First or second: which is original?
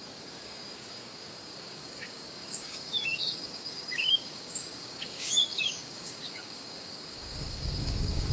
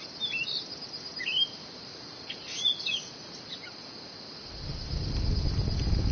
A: second